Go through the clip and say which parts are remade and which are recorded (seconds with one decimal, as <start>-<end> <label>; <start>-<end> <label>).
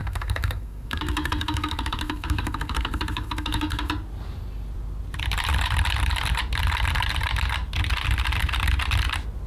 0.0-3.9 remade; 3.9-9.5 recorded